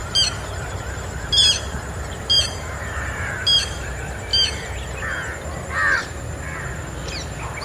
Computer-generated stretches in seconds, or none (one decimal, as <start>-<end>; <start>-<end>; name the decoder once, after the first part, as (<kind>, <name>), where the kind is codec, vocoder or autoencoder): 0.0-3.9 (vocoder, BigVGAN v2)